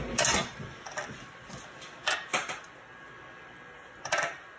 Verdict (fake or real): real